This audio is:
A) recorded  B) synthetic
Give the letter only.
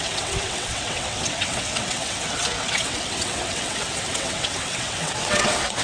B